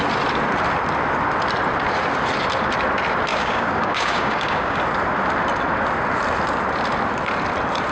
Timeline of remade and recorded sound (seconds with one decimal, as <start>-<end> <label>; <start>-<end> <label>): 0.0-3.3 recorded; 3.3-4.8 remade; 4.8-7.9 recorded